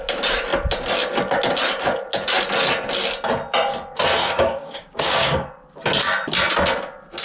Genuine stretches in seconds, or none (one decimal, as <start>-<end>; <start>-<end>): 0.0-4.2; 5.5-7.2